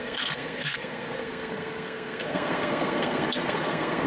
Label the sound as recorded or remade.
remade